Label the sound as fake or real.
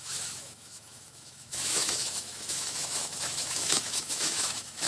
fake